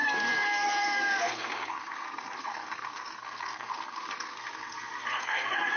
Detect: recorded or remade remade